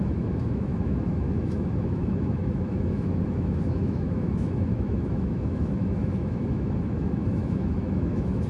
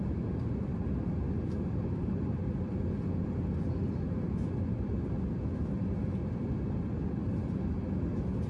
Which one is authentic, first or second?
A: second